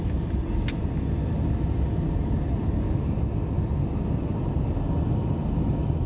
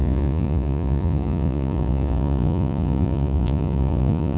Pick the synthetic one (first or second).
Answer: second